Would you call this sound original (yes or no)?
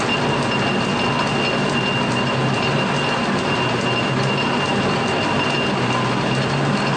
yes